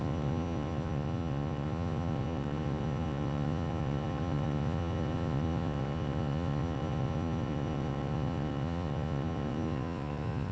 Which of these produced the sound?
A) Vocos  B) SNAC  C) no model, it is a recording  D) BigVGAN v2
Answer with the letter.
A